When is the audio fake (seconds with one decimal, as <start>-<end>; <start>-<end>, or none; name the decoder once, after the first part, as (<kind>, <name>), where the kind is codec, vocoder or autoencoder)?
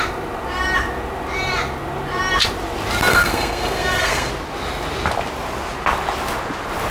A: 3.1-4.3 (codec, SNAC)